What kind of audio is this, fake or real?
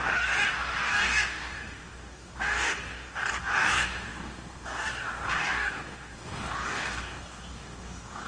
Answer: fake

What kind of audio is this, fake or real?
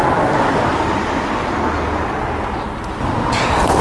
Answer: real